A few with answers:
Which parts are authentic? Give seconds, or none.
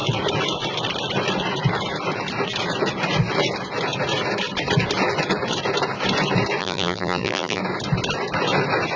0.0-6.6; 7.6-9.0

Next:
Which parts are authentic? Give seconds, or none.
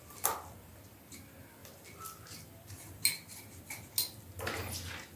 0.0-5.2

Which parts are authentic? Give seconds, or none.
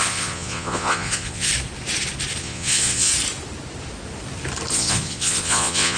1.5-2.4; 3.1-4.7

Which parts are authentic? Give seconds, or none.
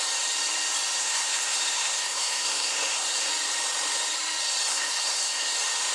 0.0-1.0; 3.3-4.7; 5.5-5.9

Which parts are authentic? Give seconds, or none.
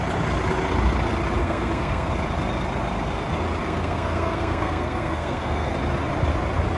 0.0-1.4; 2.1-3.6; 5.7-6.8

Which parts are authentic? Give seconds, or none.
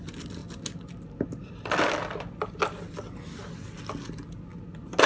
0.0-5.1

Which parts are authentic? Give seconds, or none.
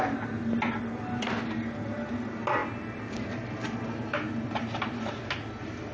0.0-5.9